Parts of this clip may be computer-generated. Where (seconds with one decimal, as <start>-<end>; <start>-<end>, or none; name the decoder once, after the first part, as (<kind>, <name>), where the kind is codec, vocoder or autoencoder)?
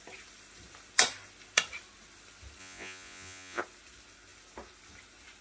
2.6-3.6 (vocoder, Vocos)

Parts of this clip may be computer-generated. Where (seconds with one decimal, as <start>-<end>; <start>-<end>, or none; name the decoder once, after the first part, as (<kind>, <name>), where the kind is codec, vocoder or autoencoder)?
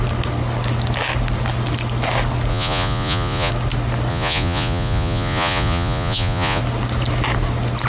2.5-3.5 (vocoder, Vocos); 4.1-6.6